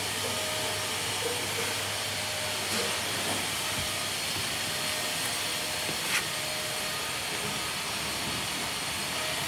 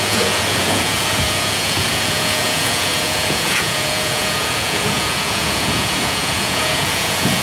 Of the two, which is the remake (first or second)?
second